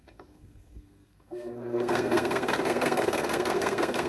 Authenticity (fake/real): fake